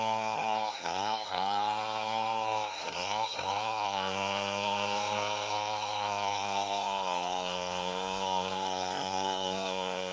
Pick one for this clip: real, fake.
fake